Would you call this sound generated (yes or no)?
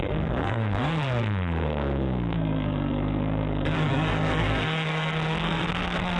yes